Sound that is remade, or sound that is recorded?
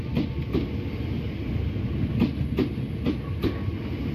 recorded